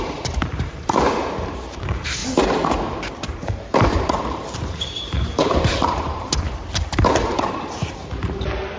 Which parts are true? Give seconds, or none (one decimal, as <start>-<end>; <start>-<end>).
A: 2.2-3.2